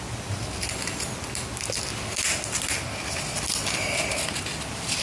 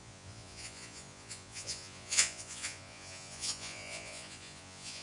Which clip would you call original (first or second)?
first